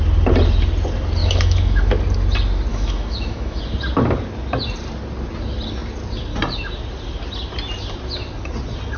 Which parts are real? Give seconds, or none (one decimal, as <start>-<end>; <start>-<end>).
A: 0.0-1.2; 1.9-2.7; 3.6-9.0